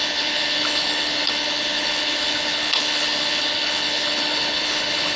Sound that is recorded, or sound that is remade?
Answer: remade